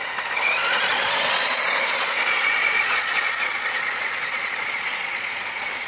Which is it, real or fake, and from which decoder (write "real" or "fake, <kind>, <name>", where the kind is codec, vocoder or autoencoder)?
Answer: fake, vocoder, Vocos